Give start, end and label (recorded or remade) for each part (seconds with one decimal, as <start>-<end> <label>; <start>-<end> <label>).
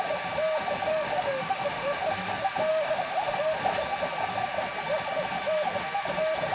0.0-0.9 recorded; 0.9-2.1 remade; 2.1-2.7 recorded; 2.7-3.6 remade; 3.6-6.5 recorded